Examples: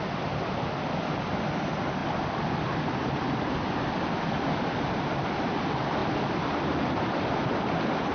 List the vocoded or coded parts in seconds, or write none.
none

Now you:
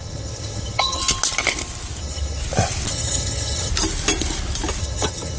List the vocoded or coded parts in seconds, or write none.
0.0-1.0 (vocoder, HiFi-GAN); 2.0-2.4; 2.9-3.7; 4.8-5.4

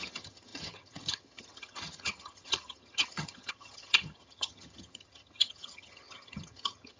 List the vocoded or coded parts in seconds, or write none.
0.0-7.0 (vocoder, HiFi-GAN)

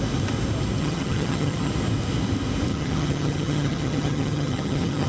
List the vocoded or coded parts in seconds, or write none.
0.8-1.7 (vocoder, HiFi-GAN); 2.7-5.1